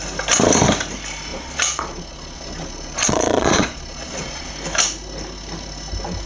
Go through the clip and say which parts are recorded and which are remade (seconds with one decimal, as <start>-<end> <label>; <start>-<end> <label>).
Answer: 0.0-1.3 recorded; 1.3-4.5 remade; 4.5-6.3 recorded